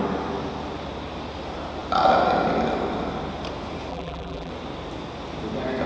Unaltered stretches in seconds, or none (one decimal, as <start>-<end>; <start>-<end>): 0.0-3.9; 4.5-5.9